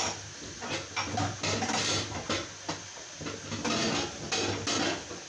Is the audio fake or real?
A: real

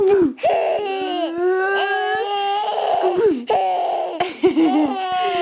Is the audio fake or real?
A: real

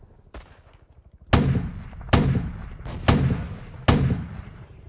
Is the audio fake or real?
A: real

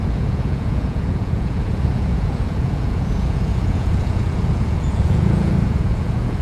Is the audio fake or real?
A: fake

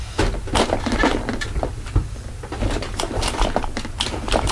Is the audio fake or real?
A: real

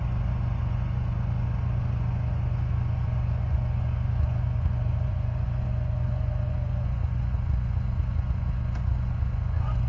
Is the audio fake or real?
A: fake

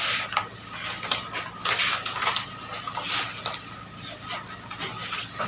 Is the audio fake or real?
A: real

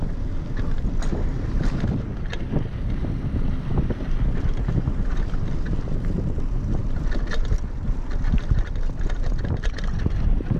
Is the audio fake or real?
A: real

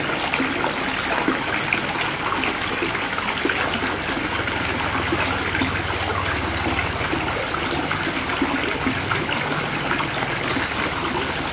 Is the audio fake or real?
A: real